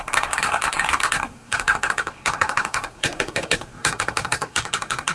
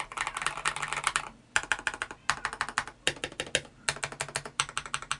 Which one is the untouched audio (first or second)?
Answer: second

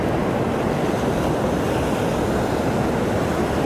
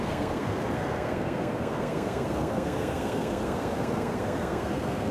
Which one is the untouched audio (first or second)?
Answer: first